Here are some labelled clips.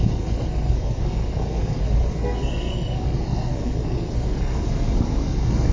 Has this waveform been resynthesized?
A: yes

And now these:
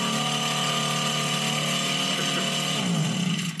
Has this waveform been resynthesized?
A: no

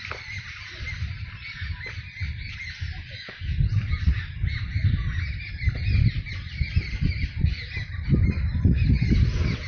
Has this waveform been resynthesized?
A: no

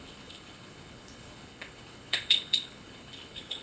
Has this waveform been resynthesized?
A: yes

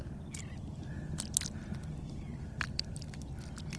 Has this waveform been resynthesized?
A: no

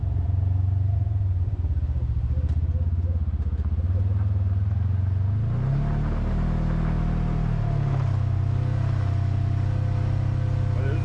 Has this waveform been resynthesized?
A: no